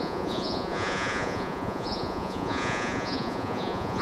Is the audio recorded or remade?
remade